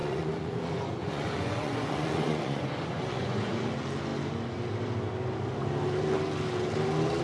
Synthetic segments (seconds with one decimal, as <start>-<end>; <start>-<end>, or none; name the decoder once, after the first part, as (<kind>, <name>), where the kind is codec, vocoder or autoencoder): 0.0-3.5 (vocoder, Vocos)